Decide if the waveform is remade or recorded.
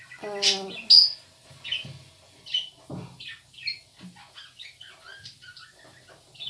recorded